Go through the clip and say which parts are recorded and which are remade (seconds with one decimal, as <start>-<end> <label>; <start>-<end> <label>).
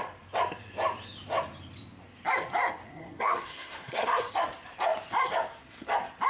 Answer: 0.0-3.0 recorded; 3.0-4.3 remade; 4.3-6.3 recorded